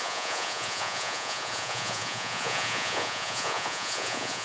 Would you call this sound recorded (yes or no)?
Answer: no